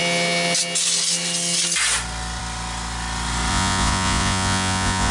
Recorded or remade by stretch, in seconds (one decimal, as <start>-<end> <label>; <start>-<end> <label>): 0.0-3.5 recorded; 3.5-5.1 remade